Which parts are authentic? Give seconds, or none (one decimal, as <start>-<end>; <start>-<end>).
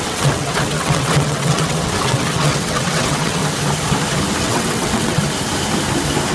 3.4-4.4; 5.2-6.3